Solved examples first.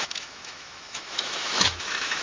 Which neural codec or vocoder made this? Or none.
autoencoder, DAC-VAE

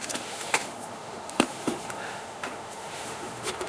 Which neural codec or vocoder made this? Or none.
autoencoder, DAC-VAE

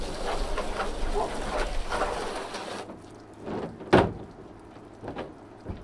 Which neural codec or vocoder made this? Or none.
none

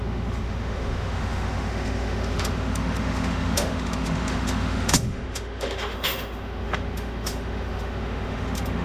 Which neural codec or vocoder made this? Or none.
autoencoder, DAC-VAE